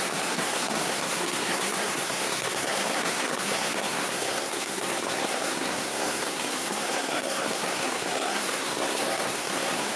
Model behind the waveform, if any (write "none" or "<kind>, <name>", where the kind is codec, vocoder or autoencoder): codec, SNAC